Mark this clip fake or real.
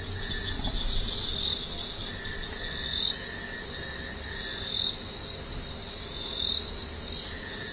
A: real